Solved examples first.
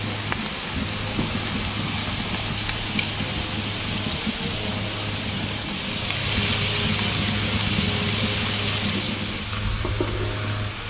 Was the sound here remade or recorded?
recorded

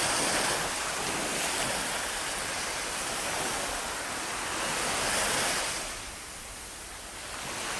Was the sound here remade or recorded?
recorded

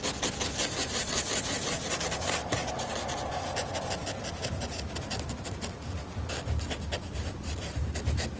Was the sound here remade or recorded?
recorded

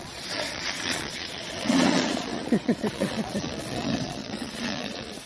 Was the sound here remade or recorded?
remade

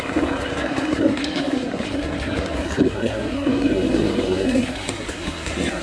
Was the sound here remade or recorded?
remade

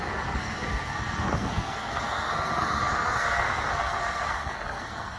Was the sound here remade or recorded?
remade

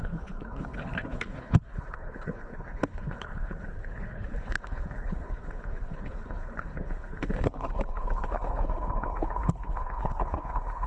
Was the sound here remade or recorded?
remade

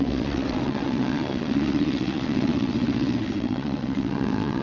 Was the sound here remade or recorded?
remade